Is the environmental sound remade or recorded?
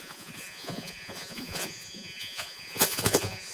remade